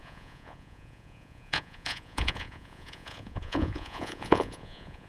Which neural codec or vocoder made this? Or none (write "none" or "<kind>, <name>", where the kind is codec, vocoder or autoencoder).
vocoder, Vocos